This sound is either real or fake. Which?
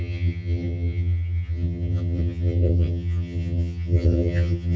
fake